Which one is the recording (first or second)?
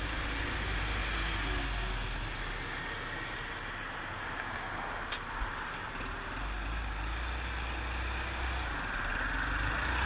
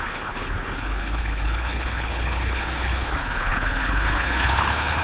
first